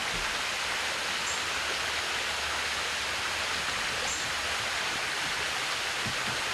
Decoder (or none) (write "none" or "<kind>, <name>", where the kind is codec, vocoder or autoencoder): none